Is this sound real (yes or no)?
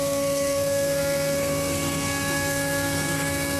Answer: no